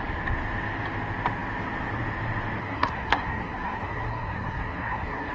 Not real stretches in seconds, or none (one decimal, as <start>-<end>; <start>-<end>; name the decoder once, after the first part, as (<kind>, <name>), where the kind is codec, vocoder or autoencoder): 2.6-5.3 (codec, SNAC)